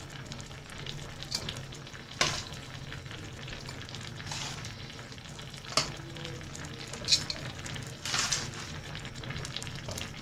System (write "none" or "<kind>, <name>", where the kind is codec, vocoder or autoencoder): none